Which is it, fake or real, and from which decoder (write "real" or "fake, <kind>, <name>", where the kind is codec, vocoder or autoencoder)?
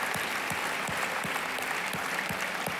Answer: real